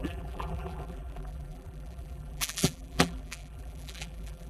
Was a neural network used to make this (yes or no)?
yes